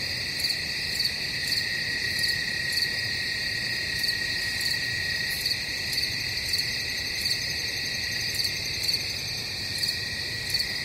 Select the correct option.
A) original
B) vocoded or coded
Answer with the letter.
B